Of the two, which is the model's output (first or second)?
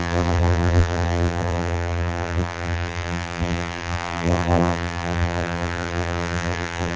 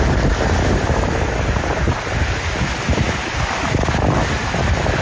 first